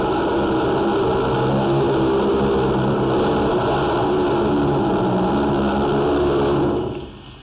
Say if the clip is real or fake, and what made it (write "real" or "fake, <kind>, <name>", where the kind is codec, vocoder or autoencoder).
real